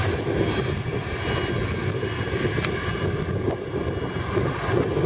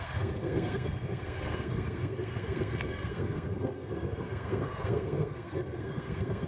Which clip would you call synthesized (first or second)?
second